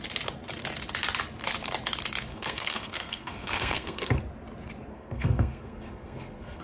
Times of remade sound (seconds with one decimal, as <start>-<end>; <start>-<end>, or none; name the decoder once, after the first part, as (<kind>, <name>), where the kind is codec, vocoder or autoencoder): 2.3-4.2 (codec, SNAC); 4.9-6.6